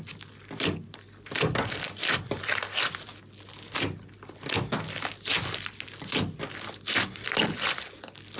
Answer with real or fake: real